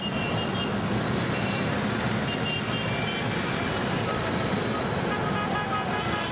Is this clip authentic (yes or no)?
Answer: yes